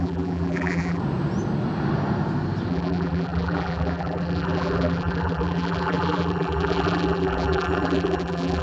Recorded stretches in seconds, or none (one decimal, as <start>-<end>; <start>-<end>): 1.0-2.7